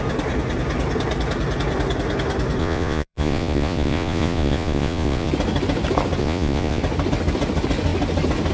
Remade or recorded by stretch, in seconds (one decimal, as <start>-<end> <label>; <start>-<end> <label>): 0.0-2.6 recorded; 2.6-5.3 remade; 5.3-6.2 recorded; 6.2-6.8 remade; 6.8-8.5 recorded